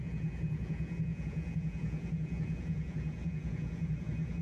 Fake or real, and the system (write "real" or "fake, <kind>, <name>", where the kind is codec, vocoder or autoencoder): fake, vocoder, Vocos